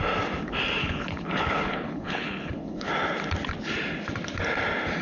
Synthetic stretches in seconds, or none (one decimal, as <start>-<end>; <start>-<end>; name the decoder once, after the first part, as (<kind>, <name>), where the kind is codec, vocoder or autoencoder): 0.8-2.9 (codec, HILCodec)